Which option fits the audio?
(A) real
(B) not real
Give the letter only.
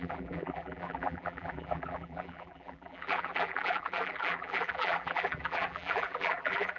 B